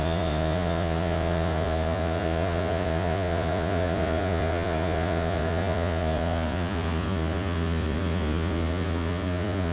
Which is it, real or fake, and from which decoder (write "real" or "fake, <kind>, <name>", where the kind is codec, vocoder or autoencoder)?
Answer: fake, vocoder, Vocos